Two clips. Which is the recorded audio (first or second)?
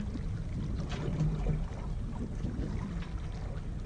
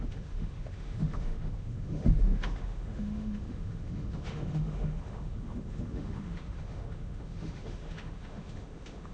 first